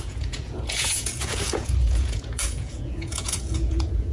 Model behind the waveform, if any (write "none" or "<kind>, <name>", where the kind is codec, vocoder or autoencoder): vocoder, Vocos